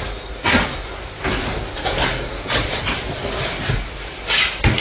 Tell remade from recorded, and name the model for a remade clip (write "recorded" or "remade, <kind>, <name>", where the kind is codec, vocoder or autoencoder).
recorded